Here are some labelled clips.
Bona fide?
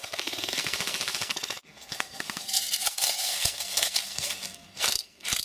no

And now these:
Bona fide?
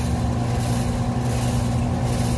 yes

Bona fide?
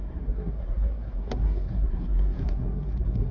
no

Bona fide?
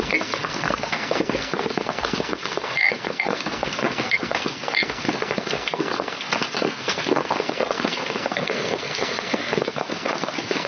no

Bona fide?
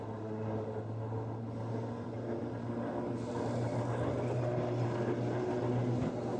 yes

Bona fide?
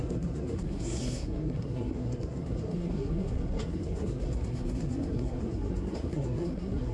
no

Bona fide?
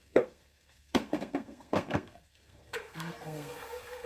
no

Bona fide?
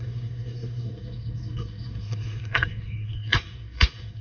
no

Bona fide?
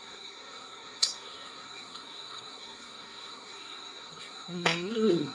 no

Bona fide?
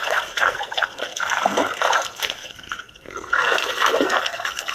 no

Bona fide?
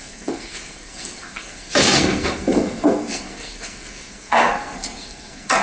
no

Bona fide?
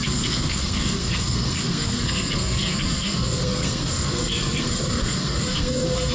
no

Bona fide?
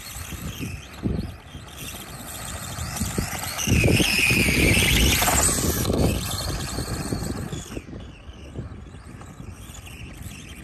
yes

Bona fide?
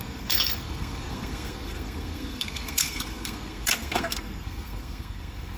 no